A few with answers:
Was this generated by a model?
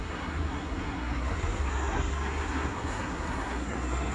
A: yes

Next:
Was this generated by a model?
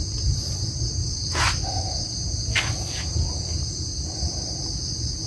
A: no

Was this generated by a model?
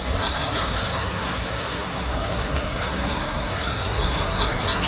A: yes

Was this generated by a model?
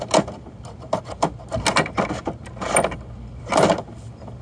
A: no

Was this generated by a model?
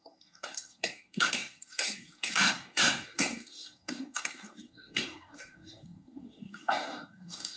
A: yes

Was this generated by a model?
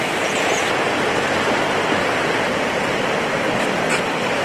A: no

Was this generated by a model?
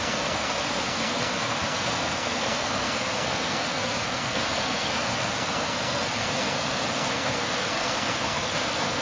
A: yes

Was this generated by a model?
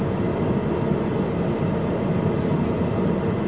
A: no